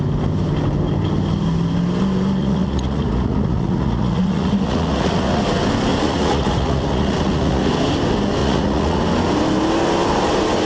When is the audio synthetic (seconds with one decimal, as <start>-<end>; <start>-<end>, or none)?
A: 2.4-5.4; 5.9-7.7; 8.4-9.0